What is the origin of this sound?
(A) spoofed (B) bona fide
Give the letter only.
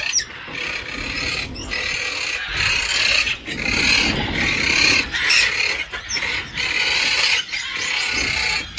B